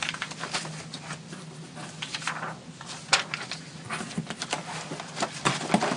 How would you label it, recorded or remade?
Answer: recorded